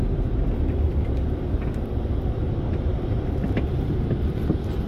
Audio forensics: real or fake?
fake